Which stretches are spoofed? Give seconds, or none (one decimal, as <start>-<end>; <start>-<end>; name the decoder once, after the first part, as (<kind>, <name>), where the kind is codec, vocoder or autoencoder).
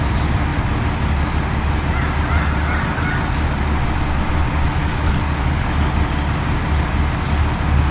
4.8-5.9 (codec, DAC)